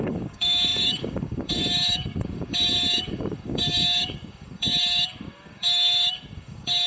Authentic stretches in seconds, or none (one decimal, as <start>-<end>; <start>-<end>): none